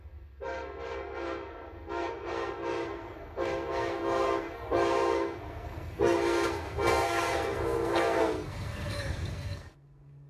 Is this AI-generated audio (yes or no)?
yes